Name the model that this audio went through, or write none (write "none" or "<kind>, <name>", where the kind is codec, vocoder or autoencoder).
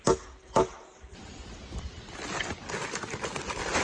vocoder, BigVGAN v2